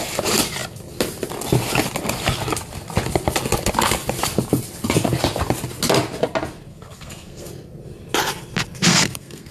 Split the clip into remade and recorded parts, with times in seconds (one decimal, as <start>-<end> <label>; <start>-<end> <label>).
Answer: 0.0-6.7 recorded; 6.7-7.5 remade; 7.5-8.9 recorded; 8.9-9.5 remade